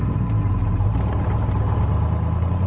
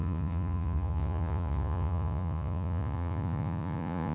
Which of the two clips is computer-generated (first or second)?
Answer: second